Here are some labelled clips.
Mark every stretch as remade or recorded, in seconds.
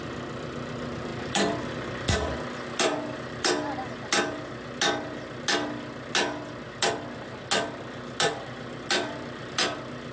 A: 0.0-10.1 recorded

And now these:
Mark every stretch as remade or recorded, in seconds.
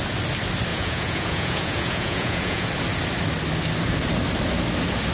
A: 0.0-0.7 recorded; 0.7-2.7 remade; 2.7-5.1 recorded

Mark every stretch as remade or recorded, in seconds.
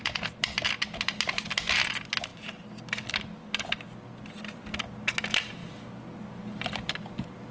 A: 0.0-7.5 recorded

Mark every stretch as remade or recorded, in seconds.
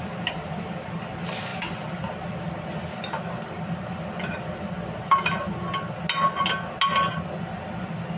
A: 0.0-8.2 recorded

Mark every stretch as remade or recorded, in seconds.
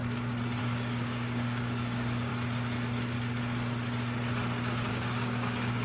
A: 0.0-0.6 recorded; 0.6-2.3 remade; 2.3-4.9 recorded; 4.9-5.8 remade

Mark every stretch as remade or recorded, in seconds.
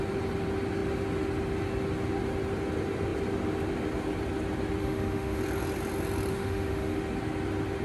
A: 0.0-4.8 recorded; 4.8-5.4 remade; 5.4-6.3 recorded; 6.3-7.0 remade; 7.0-7.8 recorded